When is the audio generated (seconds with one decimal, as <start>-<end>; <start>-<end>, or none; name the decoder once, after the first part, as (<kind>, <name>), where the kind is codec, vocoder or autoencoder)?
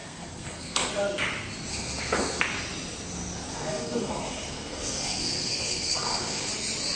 0.0-0.9 (codec, SNAC); 1.7-2.4; 3.5-6.5